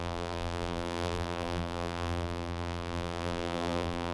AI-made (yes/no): yes